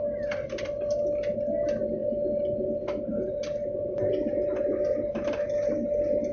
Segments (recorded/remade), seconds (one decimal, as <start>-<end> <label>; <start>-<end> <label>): 0.0-6.3 recorded